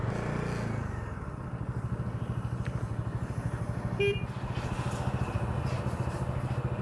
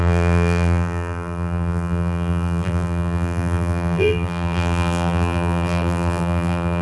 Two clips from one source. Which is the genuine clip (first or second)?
first